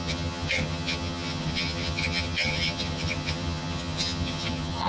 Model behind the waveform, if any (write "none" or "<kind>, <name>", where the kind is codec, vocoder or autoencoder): vocoder, HiFi-GAN